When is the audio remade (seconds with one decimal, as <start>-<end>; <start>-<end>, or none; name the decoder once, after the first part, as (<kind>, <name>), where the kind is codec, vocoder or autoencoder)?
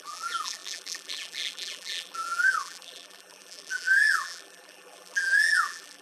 0.0-6.0 (vocoder, BigVGAN v2)